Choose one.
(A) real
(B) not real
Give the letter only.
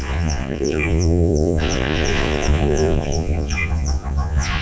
B